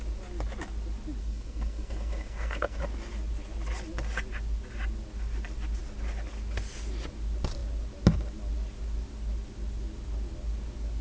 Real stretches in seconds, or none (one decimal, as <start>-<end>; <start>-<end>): 0.0-1.2; 2.8-11.0